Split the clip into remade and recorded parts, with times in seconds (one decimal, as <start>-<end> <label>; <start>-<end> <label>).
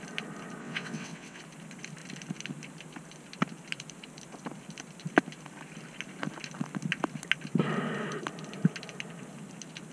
0.0-0.6 recorded; 0.6-1.4 remade; 1.4-9.9 recorded